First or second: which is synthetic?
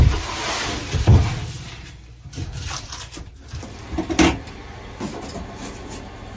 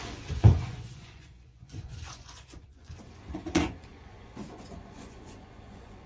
second